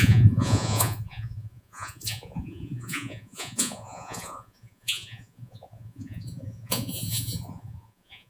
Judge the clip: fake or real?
fake